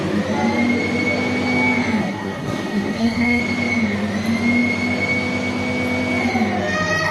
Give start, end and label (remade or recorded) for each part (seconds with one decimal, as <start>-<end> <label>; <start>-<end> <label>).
0.0-2.0 recorded; 2.0-3.4 remade; 3.4-7.1 recorded